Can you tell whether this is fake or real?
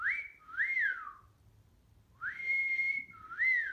real